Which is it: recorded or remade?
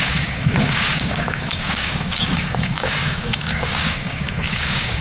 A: remade